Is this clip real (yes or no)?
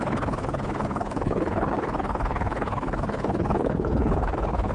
no